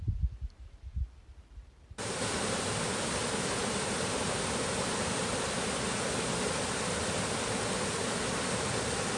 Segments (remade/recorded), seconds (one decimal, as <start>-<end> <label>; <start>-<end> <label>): 0.0-9.2 recorded